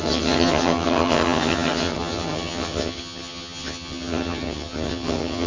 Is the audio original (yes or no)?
no